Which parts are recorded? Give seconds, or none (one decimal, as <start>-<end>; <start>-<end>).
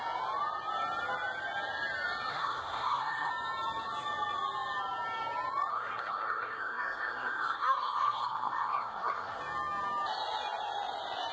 0.0-2.3; 3.3-5.7; 9.4-11.3